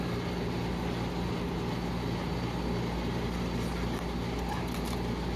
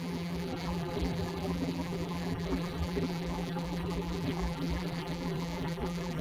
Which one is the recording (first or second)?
first